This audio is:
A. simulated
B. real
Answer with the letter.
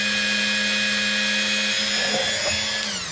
B